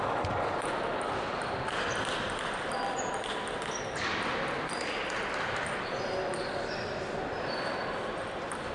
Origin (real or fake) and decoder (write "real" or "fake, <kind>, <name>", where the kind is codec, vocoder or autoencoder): real